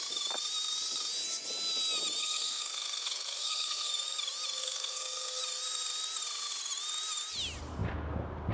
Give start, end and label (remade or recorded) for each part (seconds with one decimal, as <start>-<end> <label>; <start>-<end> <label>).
0.0-2.2 recorded; 2.2-3.9 remade; 3.9-4.6 recorded; 4.6-5.4 remade; 5.4-8.5 recorded